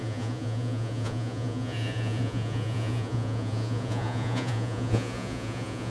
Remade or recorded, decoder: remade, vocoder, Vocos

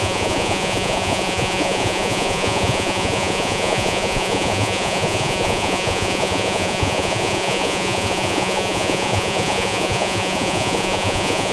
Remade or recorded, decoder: remade, vocoder, Vocos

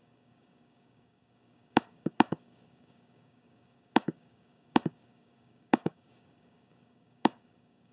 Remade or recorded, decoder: remade, codec, DAC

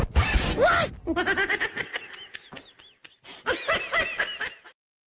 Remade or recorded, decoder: recorded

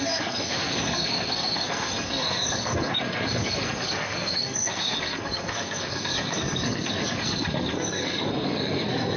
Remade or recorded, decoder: remade, codec, SNAC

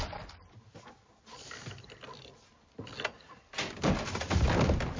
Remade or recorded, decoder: recorded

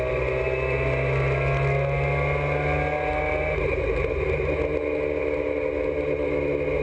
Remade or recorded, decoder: recorded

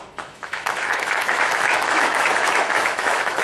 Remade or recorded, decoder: remade, autoencoder, DAC-VAE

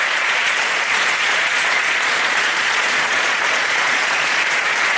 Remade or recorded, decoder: remade, vocoder, Vocos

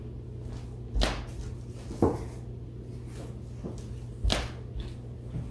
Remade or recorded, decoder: recorded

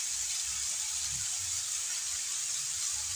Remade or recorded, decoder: recorded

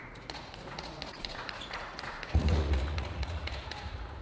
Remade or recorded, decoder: remade, vocoder, Vocos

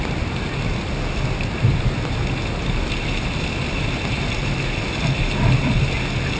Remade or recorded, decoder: recorded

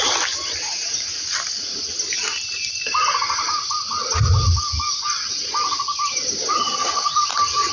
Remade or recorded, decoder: recorded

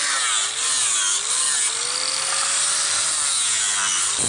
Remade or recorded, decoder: recorded